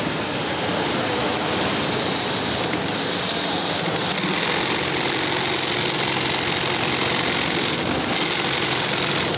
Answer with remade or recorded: recorded